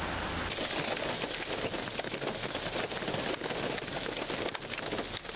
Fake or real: real